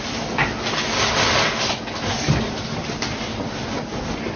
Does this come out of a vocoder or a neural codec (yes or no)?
no